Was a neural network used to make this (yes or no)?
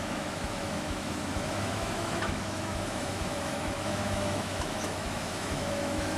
yes